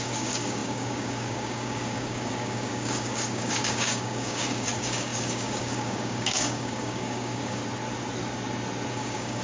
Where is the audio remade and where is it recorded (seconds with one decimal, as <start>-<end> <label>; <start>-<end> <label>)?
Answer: 0.0-7.6 remade; 7.6-8.9 recorded; 8.9-9.4 remade